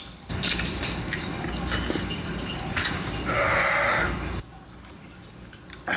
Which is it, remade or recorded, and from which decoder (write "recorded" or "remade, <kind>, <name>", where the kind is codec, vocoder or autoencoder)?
recorded